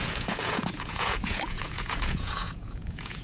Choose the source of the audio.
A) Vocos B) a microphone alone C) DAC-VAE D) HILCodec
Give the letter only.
A